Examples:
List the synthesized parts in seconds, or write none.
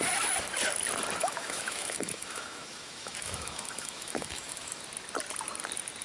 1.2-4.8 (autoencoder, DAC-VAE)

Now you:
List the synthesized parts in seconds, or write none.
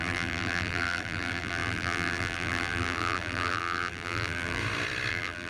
0.0-4.6 (vocoder, BigVGAN v2); 5.1-5.5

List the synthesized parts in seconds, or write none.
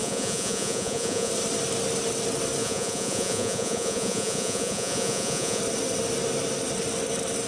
0.0-1.3 (vocoder, Vocos); 2.6-5.6